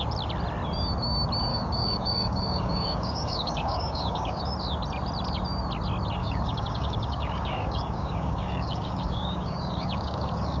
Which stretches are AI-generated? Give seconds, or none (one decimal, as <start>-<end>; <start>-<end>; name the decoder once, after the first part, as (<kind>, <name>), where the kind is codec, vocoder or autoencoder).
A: 1.5-4.4 (codec, DAC); 6.2-10.6